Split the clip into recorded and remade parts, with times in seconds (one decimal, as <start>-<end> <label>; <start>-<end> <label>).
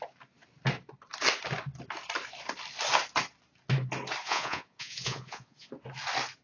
0.0-4.2 recorded; 4.2-5.7 remade; 5.7-6.4 recorded